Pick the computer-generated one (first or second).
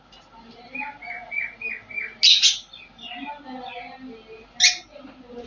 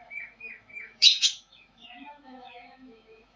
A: second